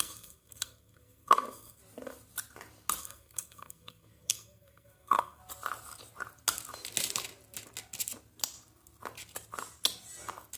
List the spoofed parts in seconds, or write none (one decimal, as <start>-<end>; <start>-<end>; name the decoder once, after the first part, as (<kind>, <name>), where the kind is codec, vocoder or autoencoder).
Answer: 0.0-1.8 (codec, SNAC); 3.0-5.4